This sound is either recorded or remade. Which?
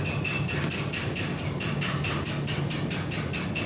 recorded